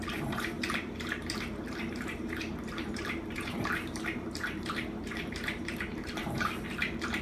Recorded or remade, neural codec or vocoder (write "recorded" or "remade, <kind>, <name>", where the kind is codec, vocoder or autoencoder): remade, vocoder, BigVGAN v2